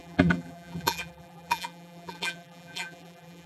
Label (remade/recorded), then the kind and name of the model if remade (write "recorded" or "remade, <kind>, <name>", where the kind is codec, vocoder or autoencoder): remade, vocoder, BigVGAN v2